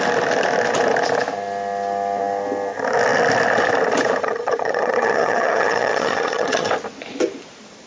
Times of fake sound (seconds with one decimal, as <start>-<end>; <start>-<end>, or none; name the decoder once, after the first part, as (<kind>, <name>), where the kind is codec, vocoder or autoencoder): 4.2-6.7 (vocoder, HiFi-GAN)